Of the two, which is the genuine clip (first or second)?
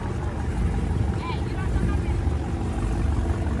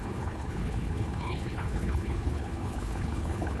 first